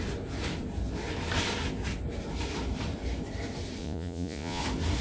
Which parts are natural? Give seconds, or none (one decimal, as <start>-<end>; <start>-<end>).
0.0-3.8; 4.6-5.0

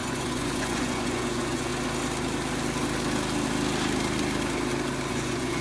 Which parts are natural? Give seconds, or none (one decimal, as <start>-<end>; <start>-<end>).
1.7-5.1

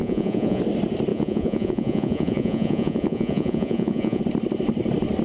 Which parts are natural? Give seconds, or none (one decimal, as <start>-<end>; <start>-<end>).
0.6-1.1; 4.2-5.2